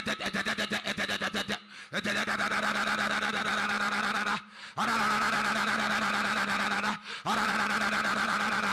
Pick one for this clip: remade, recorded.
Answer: remade